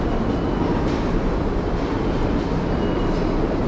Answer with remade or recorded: recorded